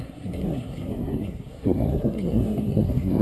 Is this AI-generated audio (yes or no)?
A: yes